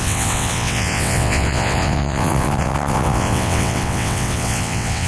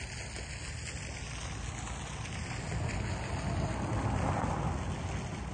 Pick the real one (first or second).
second